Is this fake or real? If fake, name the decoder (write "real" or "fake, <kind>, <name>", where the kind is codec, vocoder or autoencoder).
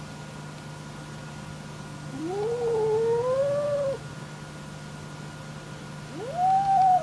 real